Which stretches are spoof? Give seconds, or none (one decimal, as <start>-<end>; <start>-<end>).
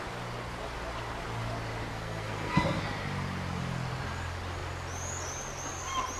1.9-2.8